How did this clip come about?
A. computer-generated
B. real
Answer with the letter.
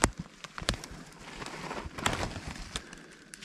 A